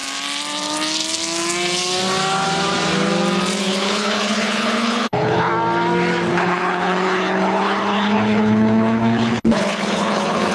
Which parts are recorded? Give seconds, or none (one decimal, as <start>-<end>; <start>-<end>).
0.0-3.6; 5.5-6.3